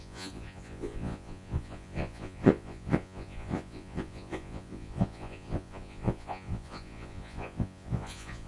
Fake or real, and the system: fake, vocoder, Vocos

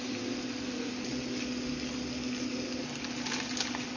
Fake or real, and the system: real